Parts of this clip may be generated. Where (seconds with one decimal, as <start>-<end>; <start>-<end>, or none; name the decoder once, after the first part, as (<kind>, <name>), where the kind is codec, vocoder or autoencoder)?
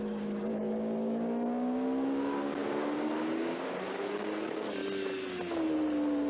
0.0-4.8 (codec, DAC)